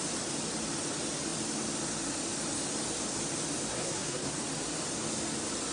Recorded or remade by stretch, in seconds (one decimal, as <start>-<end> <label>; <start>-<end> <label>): 0.0-3.7 recorded; 3.7-4.3 remade; 4.3-5.7 recorded